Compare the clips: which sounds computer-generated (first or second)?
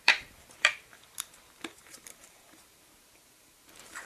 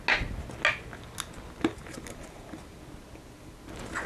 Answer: first